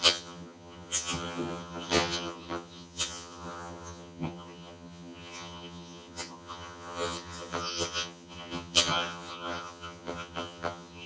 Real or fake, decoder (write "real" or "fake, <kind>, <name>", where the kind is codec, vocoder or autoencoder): fake, vocoder, HiFi-GAN